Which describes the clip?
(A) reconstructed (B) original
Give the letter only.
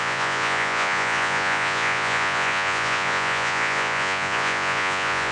A